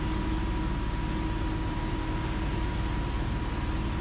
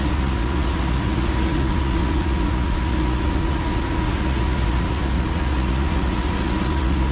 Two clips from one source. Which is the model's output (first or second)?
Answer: second